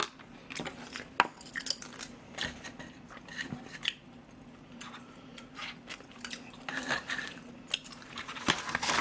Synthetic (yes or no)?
no